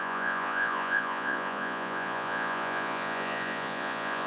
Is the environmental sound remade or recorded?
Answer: remade